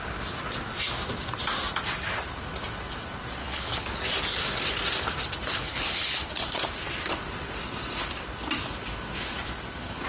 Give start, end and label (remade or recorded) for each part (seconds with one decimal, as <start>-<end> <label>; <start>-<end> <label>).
0.0-3.4 recorded; 3.4-4.0 remade; 4.0-5.5 recorded; 5.5-6.4 remade; 6.4-10.1 recorded